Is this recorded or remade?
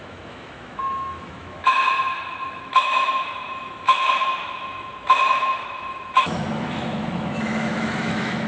remade